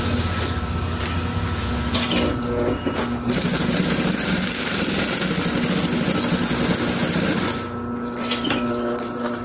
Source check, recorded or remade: recorded